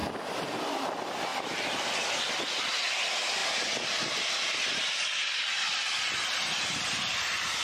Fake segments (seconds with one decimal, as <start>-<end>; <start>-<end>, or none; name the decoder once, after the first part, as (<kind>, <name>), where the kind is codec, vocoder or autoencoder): 1.3-2.3 (vocoder, BigVGAN v2)